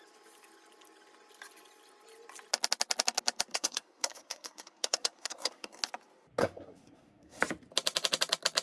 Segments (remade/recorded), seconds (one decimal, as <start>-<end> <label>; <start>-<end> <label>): 0.0-3.5 recorded; 3.5-5.8 remade; 5.8-6.4 recorded; 6.4-7.4 remade; 7.4-8.6 recorded